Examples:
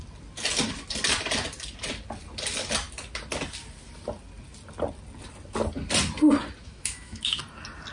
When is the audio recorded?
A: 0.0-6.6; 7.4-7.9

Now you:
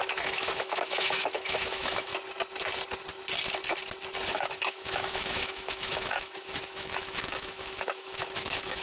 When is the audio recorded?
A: 2.1-4.3